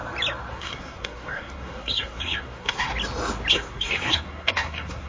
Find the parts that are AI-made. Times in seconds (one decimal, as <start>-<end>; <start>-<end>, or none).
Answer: 0.5-2.9; 3.5-5.1